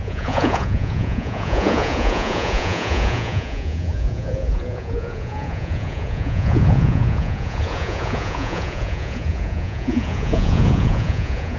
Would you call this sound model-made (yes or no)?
yes